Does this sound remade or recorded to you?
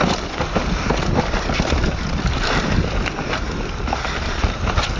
recorded